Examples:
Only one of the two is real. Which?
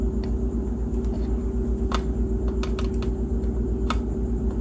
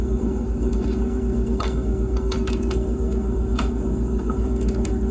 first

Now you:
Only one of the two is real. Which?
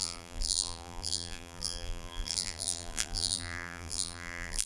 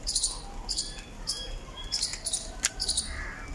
second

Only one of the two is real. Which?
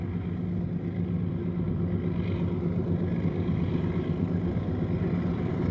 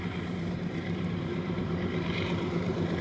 first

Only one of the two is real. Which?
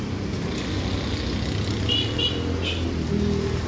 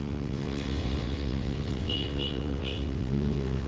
first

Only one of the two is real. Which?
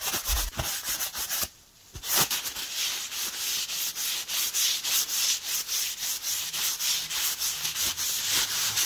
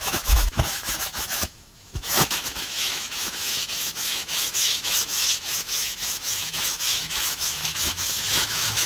first